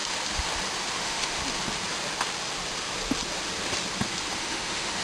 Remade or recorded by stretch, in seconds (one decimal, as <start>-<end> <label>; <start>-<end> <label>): 0.0-1.0 recorded; 1.0-1.4 remade; 1.4-4.4 recorded; 4.4-5.0 remade